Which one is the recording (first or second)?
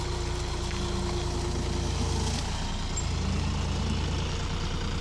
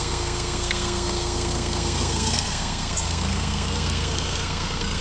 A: first